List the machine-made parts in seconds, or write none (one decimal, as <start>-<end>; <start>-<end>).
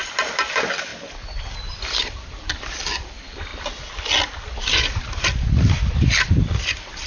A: 0.5-0.9; 1.7-3.5; 5.0-7.1